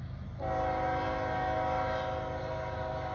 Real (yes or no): yes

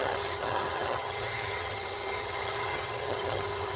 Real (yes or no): no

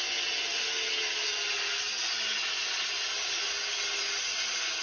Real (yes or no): yes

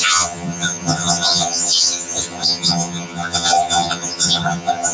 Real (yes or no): no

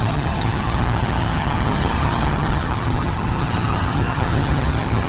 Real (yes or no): no